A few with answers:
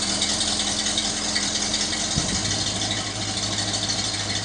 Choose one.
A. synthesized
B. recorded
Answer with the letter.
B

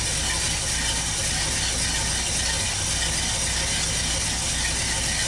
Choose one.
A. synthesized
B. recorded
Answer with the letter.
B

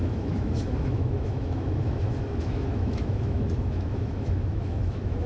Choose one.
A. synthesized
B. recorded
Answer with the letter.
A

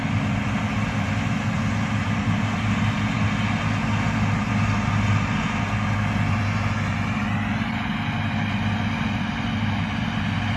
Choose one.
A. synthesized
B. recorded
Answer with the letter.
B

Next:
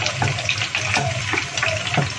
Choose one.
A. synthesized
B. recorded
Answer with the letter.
B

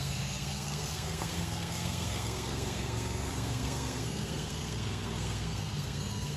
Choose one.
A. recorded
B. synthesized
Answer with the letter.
B